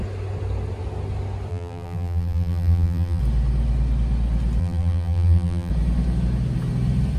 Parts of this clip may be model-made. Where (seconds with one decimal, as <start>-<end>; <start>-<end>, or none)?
1.5-3.2; 4.6-5.7